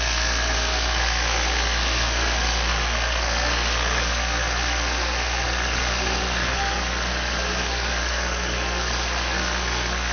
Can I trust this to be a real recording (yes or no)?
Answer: no